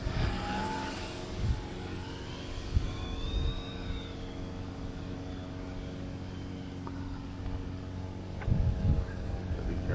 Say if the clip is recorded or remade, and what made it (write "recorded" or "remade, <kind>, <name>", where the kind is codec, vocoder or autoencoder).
remade, codec, DAC